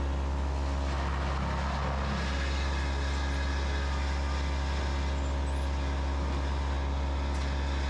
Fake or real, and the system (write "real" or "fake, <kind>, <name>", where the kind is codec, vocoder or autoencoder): real